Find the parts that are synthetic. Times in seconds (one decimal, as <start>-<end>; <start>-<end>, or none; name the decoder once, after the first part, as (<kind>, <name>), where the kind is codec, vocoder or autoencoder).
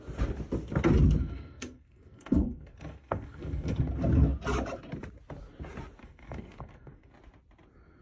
1.2-3.9 (codec, SNAC); 6.0-7.1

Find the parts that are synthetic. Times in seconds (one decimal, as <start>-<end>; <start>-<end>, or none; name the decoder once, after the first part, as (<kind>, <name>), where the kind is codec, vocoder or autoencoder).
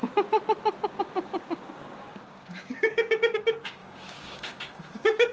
1.0-5.3 (codec, DAC)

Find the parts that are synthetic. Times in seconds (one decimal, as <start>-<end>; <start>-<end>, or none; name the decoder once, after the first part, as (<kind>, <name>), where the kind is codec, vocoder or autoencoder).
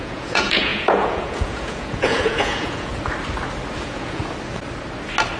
0.0-2.9 (vocoder, Vocos); 3.8-4.2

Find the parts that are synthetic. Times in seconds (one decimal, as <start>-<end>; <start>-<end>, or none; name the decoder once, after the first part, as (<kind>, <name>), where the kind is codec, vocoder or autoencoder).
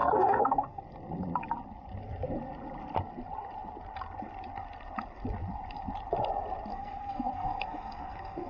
0.0-0.8 (codec, SNAC); 6.7-8.5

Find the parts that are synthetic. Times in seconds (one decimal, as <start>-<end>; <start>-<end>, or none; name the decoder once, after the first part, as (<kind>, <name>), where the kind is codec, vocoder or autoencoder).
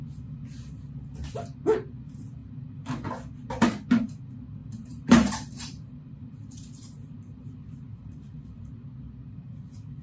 4.6-8.9 (vocoder, BigVGAN v2)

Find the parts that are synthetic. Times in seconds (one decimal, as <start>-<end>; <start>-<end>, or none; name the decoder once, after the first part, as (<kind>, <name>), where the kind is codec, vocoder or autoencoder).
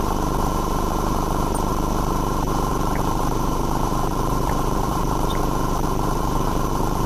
2.7-7.1 (vocoder, BigVGAN v2)